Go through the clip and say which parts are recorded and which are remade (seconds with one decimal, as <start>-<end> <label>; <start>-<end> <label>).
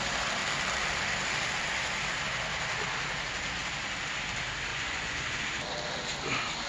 0.0-4.7 recorded; 4.7-5.4 remade; 5.4-6.7 recorded